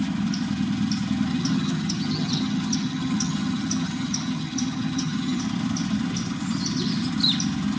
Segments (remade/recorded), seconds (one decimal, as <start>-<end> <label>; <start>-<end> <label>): 0.0-1.3 recorded; 1.3-5.4 remade; 5.4-7.8 recorded